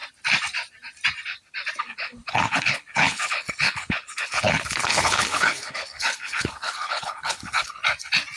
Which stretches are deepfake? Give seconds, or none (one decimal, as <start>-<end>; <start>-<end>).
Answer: 1.8-7.8